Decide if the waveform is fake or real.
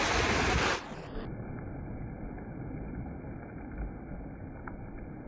real